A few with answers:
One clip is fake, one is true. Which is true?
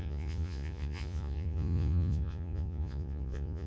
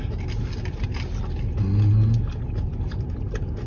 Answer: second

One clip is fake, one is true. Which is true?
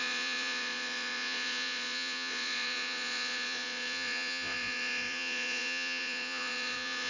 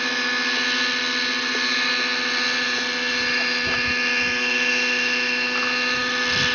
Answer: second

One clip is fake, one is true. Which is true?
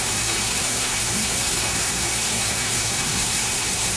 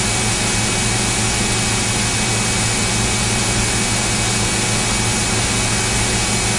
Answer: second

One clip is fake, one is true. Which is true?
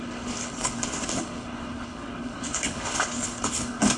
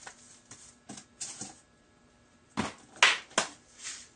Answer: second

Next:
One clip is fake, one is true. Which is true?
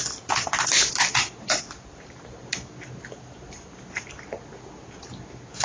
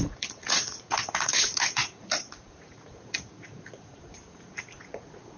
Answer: first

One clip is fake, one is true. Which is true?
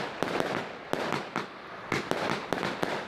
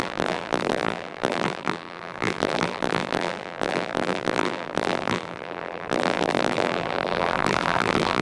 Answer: first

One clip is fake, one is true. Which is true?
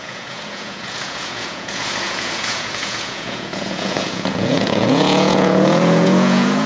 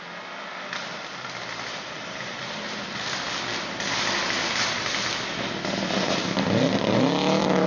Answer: second